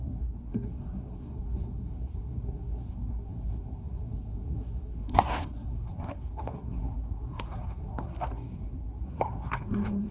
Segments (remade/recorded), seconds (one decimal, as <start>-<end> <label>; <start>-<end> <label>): 0.0-10.1 remade